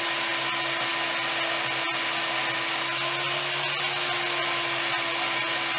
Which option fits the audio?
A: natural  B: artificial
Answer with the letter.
A